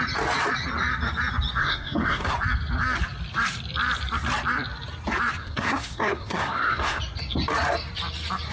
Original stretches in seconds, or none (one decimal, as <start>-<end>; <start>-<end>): 0.0-1.6; 2.3-5.4; 7.0-8.5